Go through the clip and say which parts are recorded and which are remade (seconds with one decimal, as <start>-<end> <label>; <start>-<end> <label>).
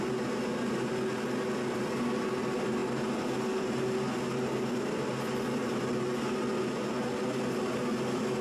0.0-5.1 recorded; 5.1-6.1 remade; 6.1-8.4 recorded